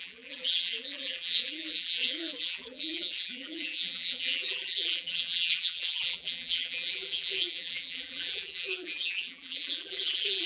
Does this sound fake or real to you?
fake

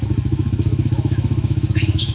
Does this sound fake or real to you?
fake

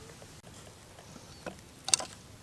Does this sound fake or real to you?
real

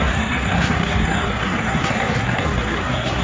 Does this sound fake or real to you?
fake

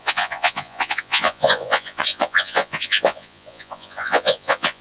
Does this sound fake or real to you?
fake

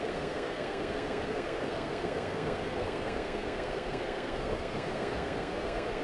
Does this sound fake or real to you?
fake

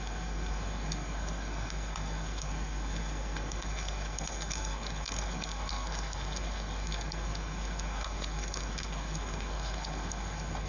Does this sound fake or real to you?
fake